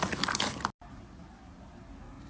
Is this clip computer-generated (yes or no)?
no